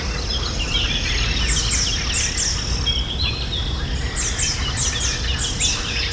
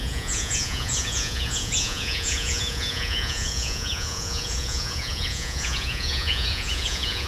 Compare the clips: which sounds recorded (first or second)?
first